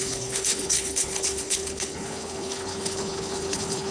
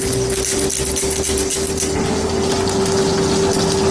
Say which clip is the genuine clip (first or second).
second